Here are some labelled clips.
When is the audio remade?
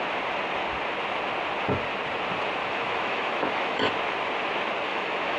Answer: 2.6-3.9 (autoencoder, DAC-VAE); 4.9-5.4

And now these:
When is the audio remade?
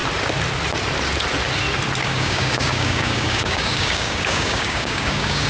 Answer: 2.0-5.5 (codec, DAC)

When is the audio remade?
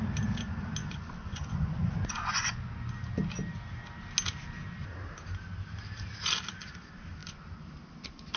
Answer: 0.8-2.7 (vocoder, Vocos)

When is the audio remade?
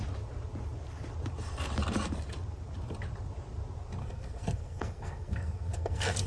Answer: 4.0-6.3 (codec, SNAC)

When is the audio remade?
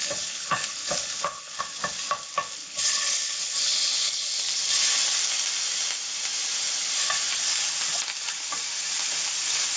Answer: 0.0-1.6 (codec, HILCodec); 2.6-4.4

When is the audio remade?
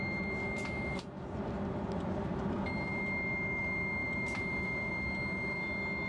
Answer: 4.0-4.9 (vocoder, BigVGAN v2)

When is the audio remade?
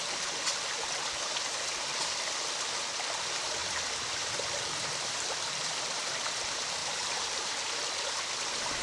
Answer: 6.8-7.5 (vocoder, BigVGAN v2)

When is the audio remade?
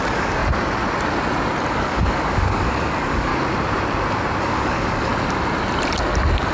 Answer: 0.0-0.4 (codec, DAC); 1.7-3.3; 4.4-5.1